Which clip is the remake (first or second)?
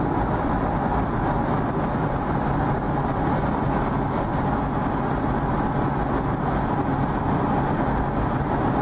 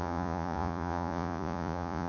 second